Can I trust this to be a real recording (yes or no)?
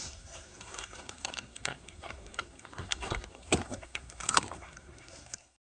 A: no